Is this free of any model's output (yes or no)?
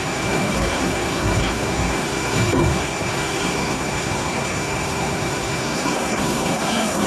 no